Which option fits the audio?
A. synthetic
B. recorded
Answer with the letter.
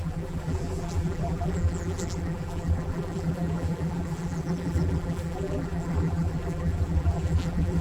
A